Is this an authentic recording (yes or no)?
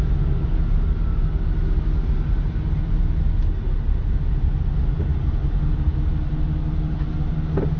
yes